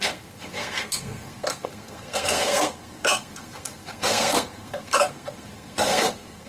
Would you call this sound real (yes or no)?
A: no